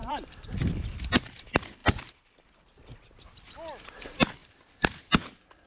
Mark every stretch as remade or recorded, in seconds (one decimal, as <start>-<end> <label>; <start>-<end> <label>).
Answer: 0.0-0.7 remade; 0.7-4.4 recorded; 4.4-5.0 remade; 5.0-5.7 recorded

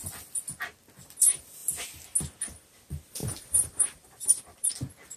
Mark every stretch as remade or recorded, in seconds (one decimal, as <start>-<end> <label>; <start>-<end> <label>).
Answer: 0.0-3.2 recorded; 3.2-4.7 remade; 4.7-5.2 recorded

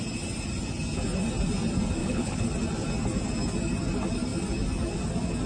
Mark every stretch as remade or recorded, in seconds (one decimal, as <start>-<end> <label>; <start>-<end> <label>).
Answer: 0.0-2.0 recorded; 2.0-2.5 remade; 2.5-5.5 recorded

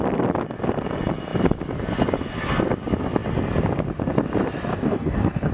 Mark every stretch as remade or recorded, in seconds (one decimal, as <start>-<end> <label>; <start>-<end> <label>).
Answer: 0.0-4.7 recorded; 4.7-5.5 remade

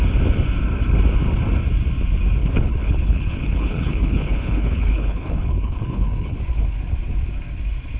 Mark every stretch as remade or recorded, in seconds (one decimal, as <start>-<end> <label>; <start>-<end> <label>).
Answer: 0.0-2.4 recorded; 2.4-6.4 remade; 6.4-8.0 recorded

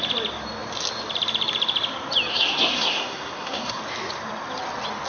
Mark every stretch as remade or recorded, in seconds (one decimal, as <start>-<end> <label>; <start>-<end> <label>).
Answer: 0.0-2.3 recorded; 2.3-3.8 remade; 3.8-5.1 recorded